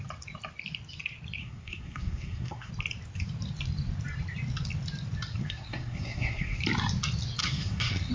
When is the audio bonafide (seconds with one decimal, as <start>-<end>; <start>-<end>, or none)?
0.0-1.4; 2.7-5.4; 6.6-7.4